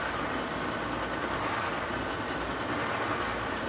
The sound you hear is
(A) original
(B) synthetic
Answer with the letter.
A